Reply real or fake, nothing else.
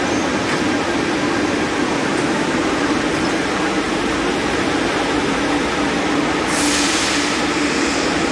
real